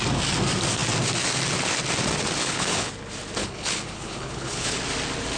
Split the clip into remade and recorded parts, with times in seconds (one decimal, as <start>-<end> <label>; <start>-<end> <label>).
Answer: 0.0-2.4 recorded; 2.4-2.9 remade; 2.9-3.4 recorded; 3.4-4.8 remade; 4.8-5.4 recorded